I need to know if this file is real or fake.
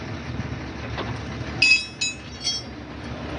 real